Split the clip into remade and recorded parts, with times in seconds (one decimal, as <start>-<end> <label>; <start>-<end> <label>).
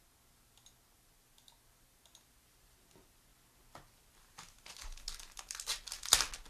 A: 0.0-6.5 recorded